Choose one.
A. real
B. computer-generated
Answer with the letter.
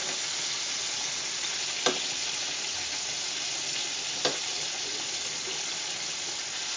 A